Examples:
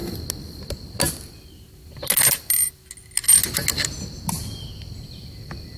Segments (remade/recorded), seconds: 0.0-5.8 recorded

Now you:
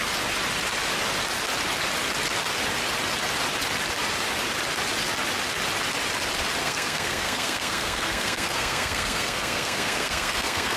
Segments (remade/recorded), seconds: 0.0-6.6 recorded; 6.6-10.8 remade